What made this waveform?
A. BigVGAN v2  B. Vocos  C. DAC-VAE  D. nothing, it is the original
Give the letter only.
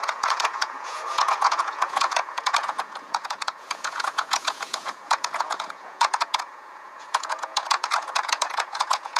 B